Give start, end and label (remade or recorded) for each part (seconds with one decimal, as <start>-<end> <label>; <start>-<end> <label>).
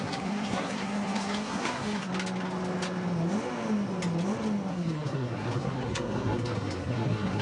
0.0-2.1 remade; 2.1-4.7 recorded; 4.7-7.4 remade